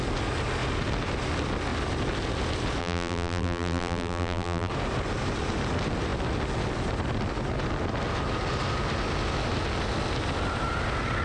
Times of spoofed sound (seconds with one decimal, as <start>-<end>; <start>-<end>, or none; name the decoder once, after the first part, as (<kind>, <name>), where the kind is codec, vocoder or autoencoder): 2.8-4.7 (vocoder, BigVGAN v2)